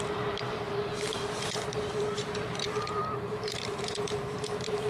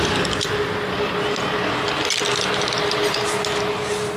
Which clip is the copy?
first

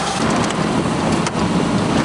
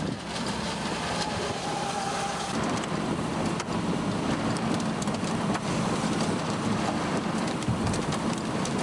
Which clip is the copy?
second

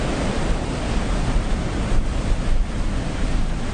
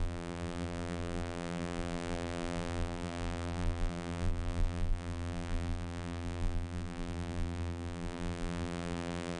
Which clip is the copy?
second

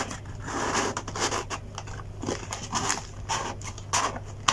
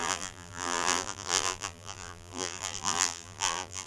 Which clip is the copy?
second